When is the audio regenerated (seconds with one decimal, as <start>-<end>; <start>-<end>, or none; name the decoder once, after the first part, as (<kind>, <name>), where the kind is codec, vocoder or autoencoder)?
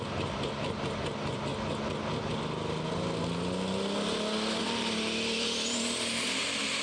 0.0-1.5 (vocoder, BigVGAN v2); 4.6-6.8